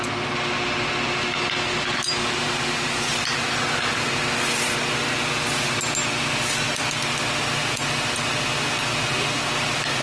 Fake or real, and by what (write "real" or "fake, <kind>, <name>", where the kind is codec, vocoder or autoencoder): real